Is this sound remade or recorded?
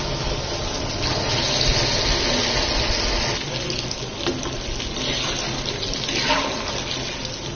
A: recorded